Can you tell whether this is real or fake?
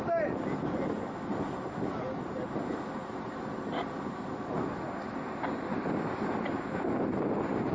real